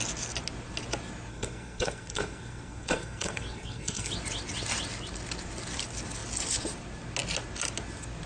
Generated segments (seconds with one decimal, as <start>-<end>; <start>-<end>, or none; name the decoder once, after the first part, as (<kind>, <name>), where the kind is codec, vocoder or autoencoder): 1.3-4.1 (codec, SNAC)